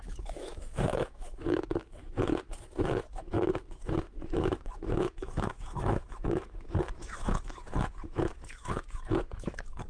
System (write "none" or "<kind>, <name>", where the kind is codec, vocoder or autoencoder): autoencoder, DAC-VAE